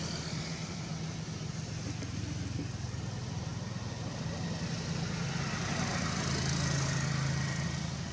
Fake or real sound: real